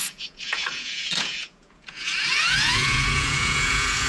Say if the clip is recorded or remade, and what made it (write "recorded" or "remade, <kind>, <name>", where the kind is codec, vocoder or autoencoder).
remade, vocoder, Vocos